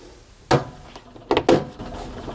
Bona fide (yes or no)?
yes